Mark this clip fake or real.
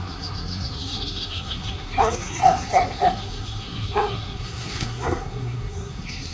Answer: fake